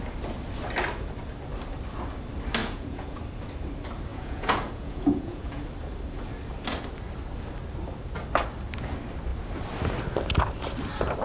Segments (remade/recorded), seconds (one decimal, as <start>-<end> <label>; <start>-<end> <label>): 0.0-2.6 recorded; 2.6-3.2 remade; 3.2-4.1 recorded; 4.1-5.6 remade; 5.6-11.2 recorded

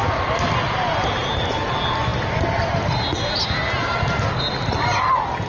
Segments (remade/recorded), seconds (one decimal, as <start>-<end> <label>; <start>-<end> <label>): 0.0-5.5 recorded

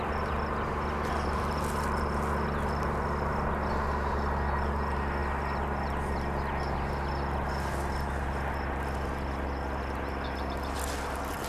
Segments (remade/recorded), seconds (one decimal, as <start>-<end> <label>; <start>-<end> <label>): 0.0-11.5 recorded

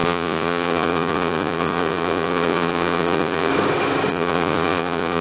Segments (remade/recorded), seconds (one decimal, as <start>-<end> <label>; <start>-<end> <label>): 0.0-3.5 remade; 3.5-4.1 recorded; 4.1-5.2 remade

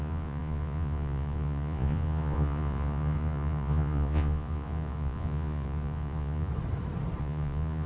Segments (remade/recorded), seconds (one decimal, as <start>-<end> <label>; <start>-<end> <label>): 0.0-6.5 remade; 6.5-7.2 recorded; 7.2-7.9 remade

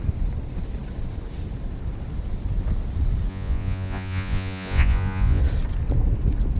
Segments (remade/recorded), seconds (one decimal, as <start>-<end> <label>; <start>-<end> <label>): 0.0-3.3 recorded; 3.3-5.4 remade; 5.4-6.6 recorded

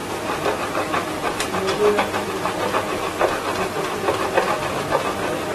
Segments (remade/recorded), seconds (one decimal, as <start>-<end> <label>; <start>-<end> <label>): 0.0-5.5 recorded